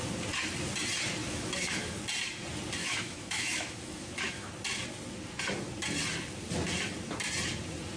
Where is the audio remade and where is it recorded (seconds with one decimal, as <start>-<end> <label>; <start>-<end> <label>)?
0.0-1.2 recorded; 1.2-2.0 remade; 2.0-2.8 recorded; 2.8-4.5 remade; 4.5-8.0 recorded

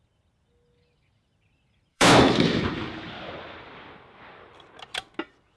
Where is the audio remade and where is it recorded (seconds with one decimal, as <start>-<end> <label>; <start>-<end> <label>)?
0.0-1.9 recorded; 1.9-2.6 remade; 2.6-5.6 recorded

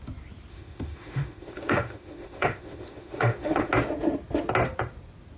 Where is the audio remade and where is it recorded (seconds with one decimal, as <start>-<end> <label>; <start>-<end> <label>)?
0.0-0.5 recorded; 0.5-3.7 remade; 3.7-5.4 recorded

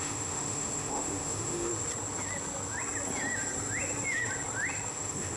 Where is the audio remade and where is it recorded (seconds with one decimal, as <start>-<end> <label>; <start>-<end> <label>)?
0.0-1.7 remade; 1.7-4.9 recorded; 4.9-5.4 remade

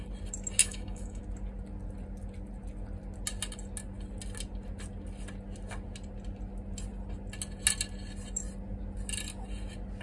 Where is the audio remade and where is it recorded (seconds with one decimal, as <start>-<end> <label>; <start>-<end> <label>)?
0.0-0.6 recorded; 0.6-1.2 remade; 1.2-10.0 recorded

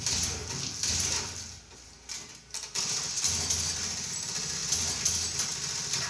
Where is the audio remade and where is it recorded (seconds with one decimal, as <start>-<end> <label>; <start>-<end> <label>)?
0.0-6.1 recorded